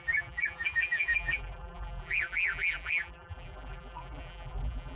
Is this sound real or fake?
fake